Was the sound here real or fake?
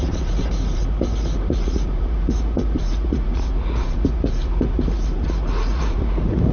fake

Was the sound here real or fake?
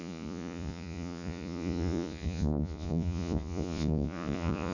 fake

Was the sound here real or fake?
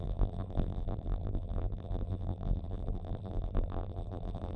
fake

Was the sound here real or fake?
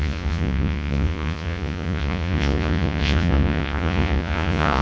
fake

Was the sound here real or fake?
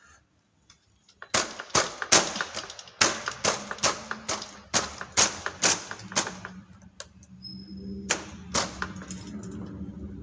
real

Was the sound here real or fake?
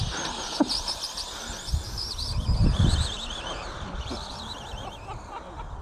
fake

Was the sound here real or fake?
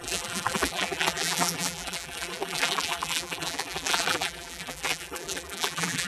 fake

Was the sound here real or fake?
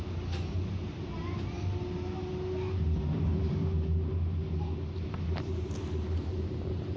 real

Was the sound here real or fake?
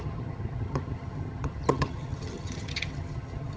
fake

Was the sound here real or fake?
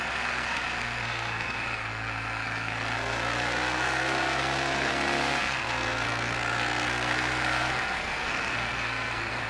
fake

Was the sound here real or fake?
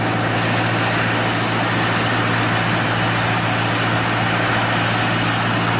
real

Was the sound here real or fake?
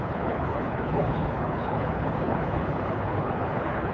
fake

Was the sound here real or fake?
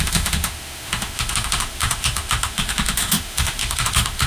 fake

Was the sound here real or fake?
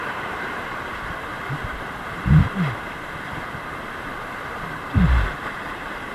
fake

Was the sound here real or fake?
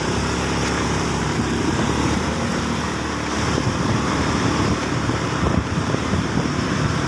fake